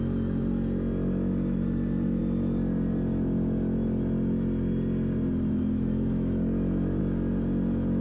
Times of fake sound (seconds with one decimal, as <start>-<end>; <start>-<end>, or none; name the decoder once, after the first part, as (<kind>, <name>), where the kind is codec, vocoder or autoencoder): none